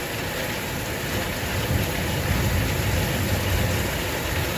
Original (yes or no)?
yes